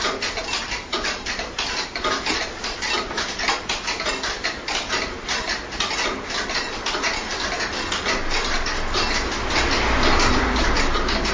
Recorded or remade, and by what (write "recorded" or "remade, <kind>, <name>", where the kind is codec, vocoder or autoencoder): recorded